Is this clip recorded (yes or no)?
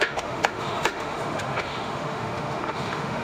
no